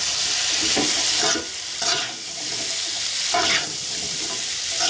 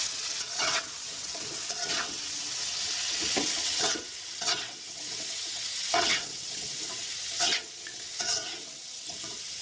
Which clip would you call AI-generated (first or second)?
second